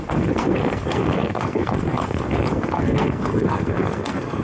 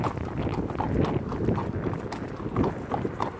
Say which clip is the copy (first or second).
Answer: first